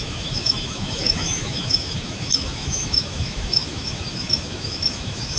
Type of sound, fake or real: fake